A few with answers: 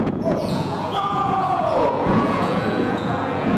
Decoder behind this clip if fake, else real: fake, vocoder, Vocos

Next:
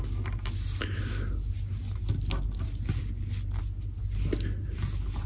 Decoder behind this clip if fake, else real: real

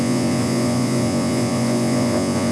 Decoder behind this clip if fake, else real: fake, vocoder, Vocos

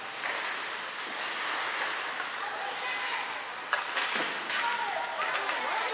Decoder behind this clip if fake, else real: real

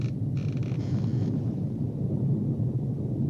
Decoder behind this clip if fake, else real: real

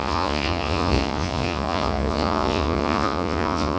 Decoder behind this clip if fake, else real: fake, vocoder, Vocos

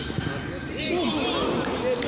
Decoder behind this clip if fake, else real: real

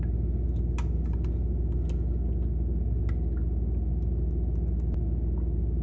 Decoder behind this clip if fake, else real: real